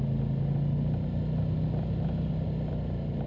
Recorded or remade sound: recorded